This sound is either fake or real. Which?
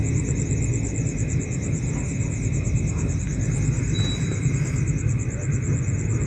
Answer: real